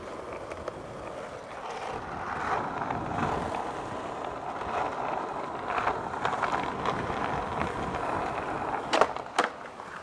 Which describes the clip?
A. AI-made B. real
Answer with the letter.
B